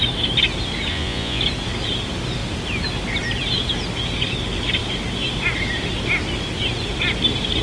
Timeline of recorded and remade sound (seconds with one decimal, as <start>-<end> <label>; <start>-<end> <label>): 0.0-0.9 recorded; 0.9-1.4 remade; 1.4-7.6 recorded